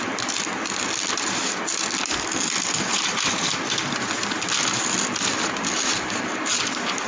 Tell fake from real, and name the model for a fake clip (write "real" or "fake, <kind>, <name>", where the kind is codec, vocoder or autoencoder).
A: fake, vocoder, BigVGAN v2